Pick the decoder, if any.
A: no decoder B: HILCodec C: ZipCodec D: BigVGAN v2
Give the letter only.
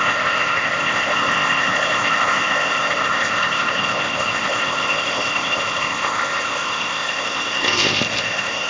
C